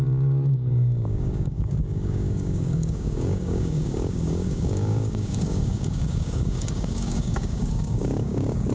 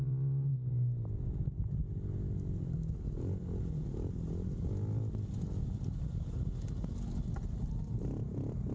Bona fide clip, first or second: second